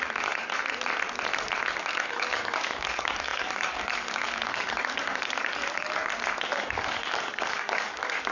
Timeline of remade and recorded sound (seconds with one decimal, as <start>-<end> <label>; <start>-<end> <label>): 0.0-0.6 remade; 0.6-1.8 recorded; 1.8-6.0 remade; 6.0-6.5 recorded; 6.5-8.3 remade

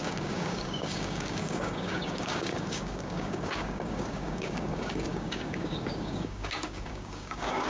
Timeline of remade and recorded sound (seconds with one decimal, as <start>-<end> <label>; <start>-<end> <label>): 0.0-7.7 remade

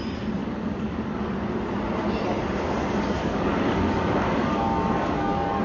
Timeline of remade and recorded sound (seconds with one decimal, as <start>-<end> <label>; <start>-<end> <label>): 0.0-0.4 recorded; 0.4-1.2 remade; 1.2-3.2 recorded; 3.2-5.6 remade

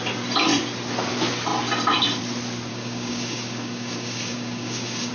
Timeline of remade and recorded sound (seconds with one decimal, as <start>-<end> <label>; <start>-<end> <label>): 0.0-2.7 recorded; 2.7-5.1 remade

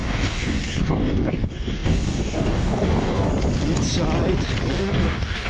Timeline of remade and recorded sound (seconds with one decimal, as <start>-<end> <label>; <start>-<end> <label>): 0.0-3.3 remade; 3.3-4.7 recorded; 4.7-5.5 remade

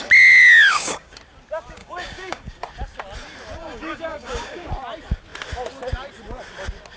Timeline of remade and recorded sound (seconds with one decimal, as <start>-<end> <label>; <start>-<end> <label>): 0.0-0.7 recorded; 0.7-1.2 remade; 1.2-1.8 recorded; 1.8-2.6 remade; 2.6-3.6 recorded; 3.6-4.7 remade; 4.7-7.0 recorded

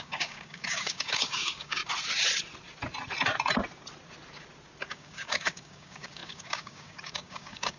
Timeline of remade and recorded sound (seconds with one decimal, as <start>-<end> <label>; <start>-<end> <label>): 0.0-1.8 remade; 1.8-4.9 recorded; 4.9-7.8 remade